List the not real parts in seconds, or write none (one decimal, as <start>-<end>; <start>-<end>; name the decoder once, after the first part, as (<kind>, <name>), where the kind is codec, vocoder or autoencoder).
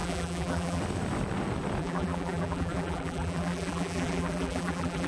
0.0-0.8 (vocoder, BigVGAN v2); 1.8-5.1